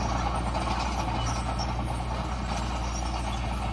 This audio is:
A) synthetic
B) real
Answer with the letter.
B